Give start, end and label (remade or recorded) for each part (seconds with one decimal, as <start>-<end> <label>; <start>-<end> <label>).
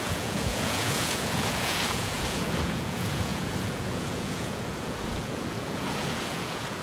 0.0-6.8 remade